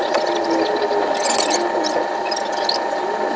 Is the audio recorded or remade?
recorded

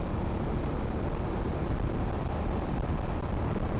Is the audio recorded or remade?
recorded